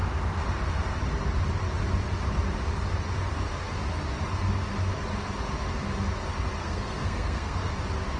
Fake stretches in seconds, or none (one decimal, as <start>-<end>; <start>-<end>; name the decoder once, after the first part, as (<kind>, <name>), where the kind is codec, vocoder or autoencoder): 6.6-7.7 (codec, SNAC)